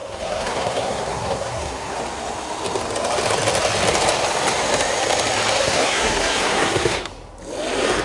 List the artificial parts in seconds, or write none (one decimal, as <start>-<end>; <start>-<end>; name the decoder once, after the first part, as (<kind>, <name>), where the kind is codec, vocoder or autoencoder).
0.0-2.0 (codec, SNAC); 5.6-7.0